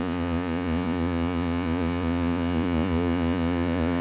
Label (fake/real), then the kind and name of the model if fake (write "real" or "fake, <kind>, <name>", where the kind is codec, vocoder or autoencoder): fake, vocoder, Vocos